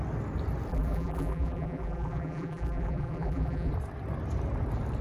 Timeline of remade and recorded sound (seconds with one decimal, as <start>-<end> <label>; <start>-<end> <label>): 0.0-0.7 recorded; 0.7-3.7 remade; 3.7-5.0 recorded